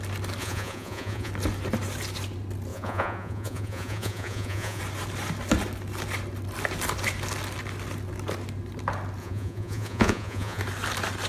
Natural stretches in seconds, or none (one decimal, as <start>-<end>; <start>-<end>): 0.0-0.4; 1.3-2.7; 4.8-9.2; 10.6-11.3